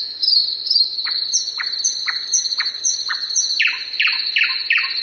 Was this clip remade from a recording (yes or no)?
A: no